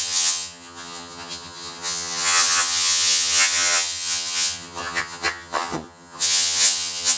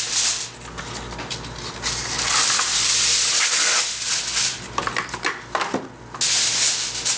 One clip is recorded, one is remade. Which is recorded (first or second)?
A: second